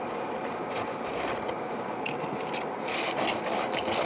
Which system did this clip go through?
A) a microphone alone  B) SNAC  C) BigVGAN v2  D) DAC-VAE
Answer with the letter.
A